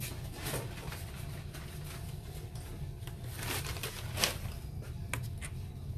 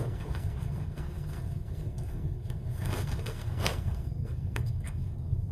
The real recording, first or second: first